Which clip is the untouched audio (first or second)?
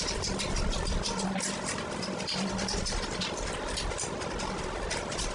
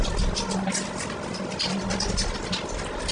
second